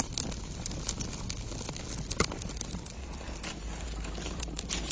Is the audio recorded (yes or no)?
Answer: yes